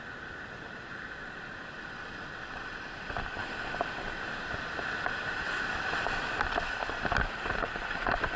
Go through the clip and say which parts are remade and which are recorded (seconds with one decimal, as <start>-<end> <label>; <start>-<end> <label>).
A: 0.0-8.4 recorded